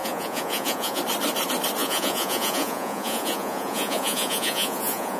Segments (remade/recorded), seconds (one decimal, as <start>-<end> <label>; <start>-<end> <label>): 0.0-1.0 remade; 1.0-1.8 recorded; 1.8-5.2 remade